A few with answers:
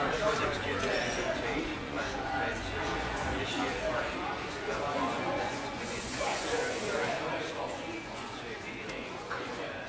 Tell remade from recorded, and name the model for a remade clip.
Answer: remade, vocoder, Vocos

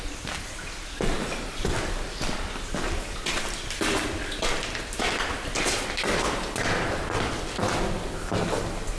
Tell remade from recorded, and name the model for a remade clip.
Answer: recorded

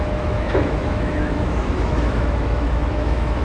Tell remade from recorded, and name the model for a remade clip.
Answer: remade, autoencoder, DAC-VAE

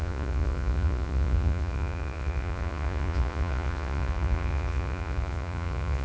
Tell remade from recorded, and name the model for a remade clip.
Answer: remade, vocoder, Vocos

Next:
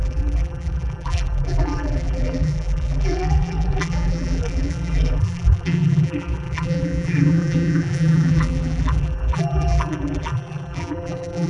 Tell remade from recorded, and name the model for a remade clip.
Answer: remade, vocoder, BigVGAN v2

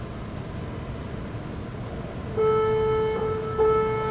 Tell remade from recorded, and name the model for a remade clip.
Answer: recorded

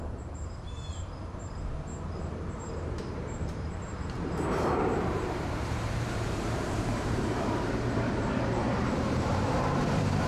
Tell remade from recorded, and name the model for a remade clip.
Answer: remade, vocoder, BigVGAN v2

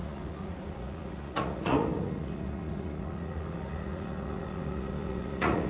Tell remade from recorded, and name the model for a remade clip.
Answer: remade, vocoder, Vocos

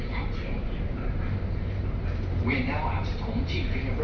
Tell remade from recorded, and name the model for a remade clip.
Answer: remade, vocoder, BigVGAN v2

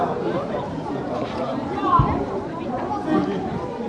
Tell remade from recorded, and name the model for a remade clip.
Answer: remade, vocoder, BigVGAN v2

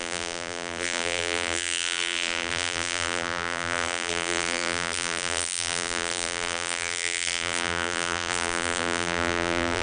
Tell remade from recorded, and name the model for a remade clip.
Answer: remade, vocoder, BigVGAN v2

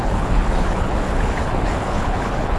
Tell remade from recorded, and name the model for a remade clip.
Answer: remade, codec, HILCodec